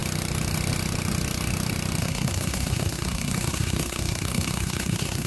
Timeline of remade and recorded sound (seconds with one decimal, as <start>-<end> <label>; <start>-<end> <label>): 0.0-2.0 recorded; 2.0-5.3 remade